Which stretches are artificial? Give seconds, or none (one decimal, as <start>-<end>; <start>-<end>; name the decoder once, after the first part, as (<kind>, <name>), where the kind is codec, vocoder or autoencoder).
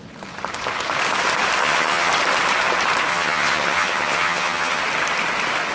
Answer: 1.6-2.1 (vocoder, HiFi-GAN); 3.1-4.8